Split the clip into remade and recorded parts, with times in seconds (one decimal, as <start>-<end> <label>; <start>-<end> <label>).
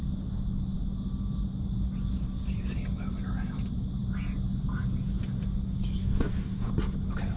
0.0-6.0 recorded; 6.0-6.7 remade; 6.7-7.4 recorded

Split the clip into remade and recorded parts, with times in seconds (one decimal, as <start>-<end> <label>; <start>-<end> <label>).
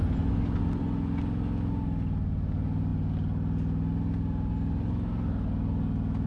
0.0-6.3 recorded